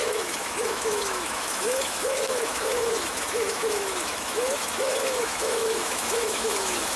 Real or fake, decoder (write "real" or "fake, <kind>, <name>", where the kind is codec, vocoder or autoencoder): fake, autoencoder, DAC-VAE